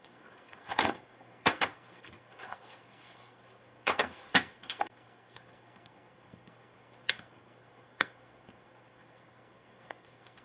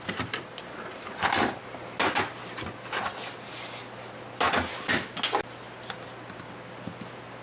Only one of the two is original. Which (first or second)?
second